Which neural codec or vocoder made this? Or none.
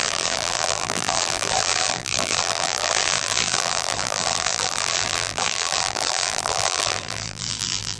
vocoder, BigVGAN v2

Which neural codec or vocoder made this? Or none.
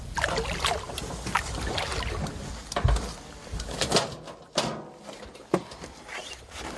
none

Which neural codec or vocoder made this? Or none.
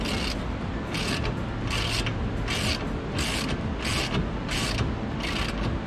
none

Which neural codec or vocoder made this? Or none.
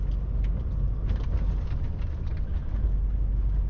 none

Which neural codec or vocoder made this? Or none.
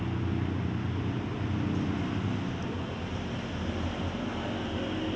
none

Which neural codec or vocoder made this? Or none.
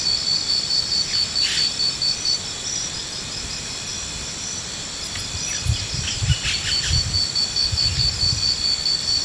none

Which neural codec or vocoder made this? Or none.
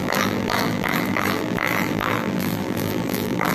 vocoder, BigVGAN v2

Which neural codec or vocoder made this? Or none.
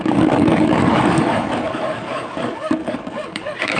codec, DAC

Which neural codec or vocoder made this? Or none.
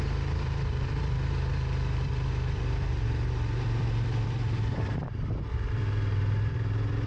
vocoder, BigVGAN v2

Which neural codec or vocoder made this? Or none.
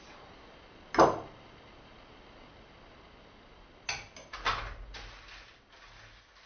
none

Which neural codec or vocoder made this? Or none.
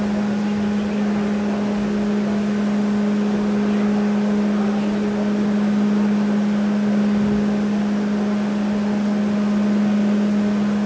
none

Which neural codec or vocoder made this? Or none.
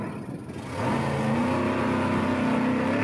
none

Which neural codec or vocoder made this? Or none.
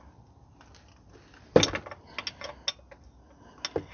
none